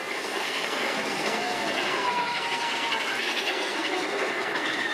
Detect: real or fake fake